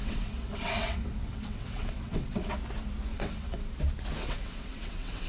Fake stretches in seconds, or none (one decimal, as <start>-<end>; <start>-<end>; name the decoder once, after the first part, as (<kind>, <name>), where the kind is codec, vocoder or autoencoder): 0.0-2.5 (vocoder, WaveNeXt); 3.1-3.7; 4.2-5.3

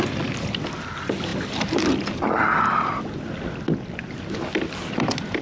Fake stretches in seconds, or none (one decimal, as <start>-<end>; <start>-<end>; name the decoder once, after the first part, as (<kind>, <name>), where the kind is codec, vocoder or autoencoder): none

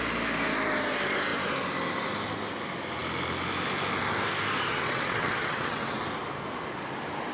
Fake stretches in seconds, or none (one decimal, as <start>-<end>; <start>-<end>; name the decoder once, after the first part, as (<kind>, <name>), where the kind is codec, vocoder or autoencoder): 4.7-6.0 (vocoder, WaveNeXt)

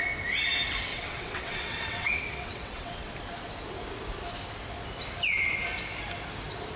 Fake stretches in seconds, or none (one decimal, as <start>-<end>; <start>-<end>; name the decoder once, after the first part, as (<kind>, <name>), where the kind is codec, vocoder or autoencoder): 0.9-3.1 (vocoder, WaveNeXt)

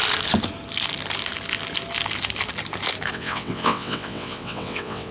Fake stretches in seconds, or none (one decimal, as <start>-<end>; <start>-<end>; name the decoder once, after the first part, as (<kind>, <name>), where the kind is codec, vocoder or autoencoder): 3.1-5.1 (vocoder, WaveNeXt)

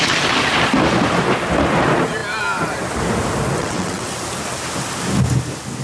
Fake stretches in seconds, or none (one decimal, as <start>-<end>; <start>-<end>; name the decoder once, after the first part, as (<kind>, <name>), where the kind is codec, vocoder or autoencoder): 3.6-4.1 (vocoder, WaveNeXt)

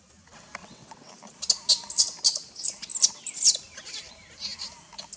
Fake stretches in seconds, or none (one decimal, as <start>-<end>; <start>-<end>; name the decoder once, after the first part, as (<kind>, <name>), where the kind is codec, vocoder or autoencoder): 0.6-1.1 (vocoder, WaveNeXt)